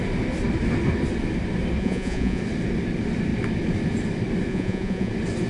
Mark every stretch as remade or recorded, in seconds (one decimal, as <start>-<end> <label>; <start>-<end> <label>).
0.0-1.8 recorded; 1.8-2.4 remade; 2.4-4.5 recorded; 4.5-5.1 remade; 5.1-5.5 recorded